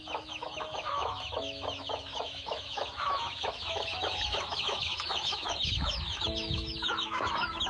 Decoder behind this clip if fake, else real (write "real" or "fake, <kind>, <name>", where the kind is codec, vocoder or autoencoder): fake, autoencoder, DAC-VAE